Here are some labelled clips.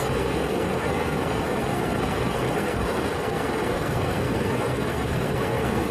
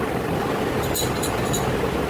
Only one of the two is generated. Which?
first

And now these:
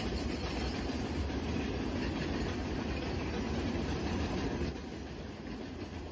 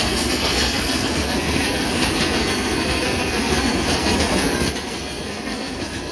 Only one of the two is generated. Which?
second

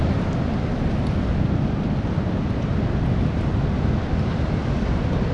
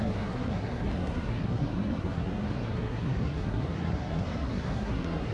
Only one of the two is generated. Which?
second